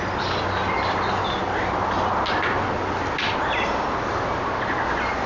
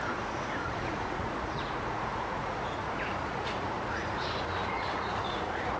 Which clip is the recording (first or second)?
first